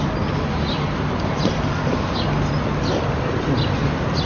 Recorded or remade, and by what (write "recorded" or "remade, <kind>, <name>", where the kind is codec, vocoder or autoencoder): recorded